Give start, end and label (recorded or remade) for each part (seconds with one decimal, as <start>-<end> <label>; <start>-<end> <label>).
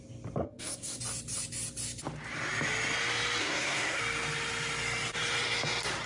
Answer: 0.0-0.4 recorded; 0.4-1.0 remade; 1.0-3.4 recorded; 3.4-4.0 remade; 4.0-6.1 recorded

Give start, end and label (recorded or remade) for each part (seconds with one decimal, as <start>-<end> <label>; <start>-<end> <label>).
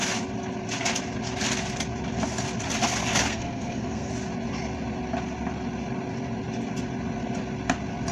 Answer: 0.0-3.3 recorded; 3.3-4.1 remade; 4.1-8.1 recorded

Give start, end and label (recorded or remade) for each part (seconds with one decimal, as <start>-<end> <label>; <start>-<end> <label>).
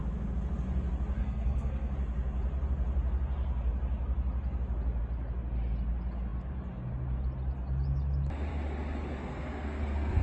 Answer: 0.0-1.2 recorded; 1.2-1.9 remade; 1.9-9.2 recorded; 9.2-10.2 remade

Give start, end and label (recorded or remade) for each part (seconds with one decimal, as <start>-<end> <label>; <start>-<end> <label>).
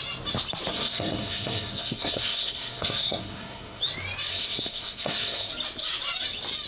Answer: 0.0-0.7 recorded; 0.7-3.8 remade; 3.8-4.3 recorded; 4.3-5.5 remade; 5.5-6.7 recorded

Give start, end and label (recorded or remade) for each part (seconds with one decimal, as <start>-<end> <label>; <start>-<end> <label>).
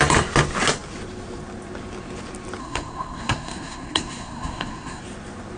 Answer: 0.0-2.6 recorded; 2.6-5.0 remade; 5.0-5.6 recorded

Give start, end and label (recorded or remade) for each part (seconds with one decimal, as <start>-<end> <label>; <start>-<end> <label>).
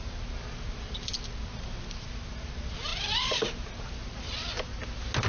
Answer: 0.0-5.3 recorded